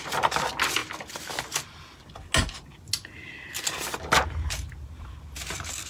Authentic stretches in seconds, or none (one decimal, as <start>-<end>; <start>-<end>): 0.0-5.9